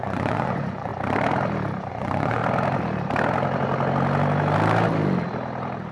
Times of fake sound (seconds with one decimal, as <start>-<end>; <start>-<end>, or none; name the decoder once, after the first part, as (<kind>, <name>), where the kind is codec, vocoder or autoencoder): 0.0-0.9 (vocoder, Vocos); 1.9-2.4